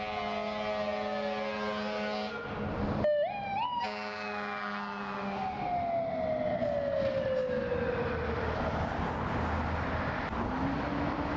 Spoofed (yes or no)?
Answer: no